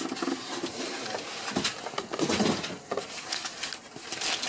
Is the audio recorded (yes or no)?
yes